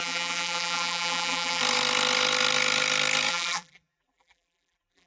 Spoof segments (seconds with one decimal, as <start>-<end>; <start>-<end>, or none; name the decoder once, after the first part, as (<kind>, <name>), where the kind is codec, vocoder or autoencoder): 0.0-1.6 (vocoder, BigVGAN v2); 3.3-5.1